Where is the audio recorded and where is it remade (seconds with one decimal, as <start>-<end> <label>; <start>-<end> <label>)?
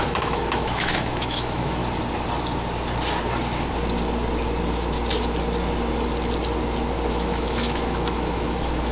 0.0-1.8 remade; 1.8-7.1 recorded; 7.1-8.9 remade